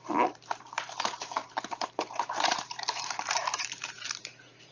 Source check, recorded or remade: remade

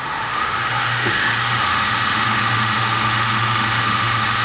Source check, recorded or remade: remade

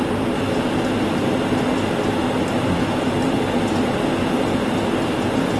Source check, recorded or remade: recorded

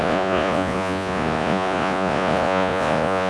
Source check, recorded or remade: remade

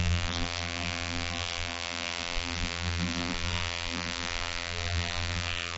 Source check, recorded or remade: remade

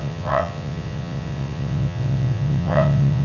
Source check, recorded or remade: remade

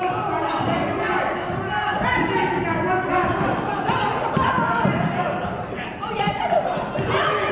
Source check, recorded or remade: recorded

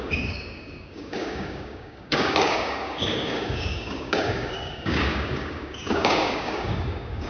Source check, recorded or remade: remade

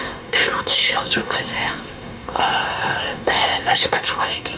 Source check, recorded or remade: remade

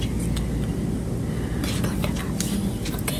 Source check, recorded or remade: recorded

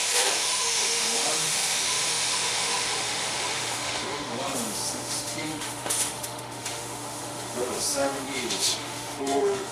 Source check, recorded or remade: remade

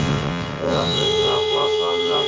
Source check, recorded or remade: remade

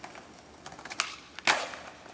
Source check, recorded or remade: recorded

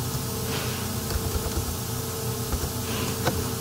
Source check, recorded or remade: recorded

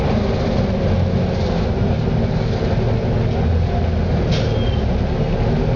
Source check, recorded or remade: recorded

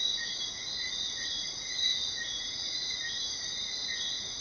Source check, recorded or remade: remade